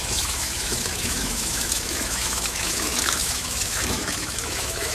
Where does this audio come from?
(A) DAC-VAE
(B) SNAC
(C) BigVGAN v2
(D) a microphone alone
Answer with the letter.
A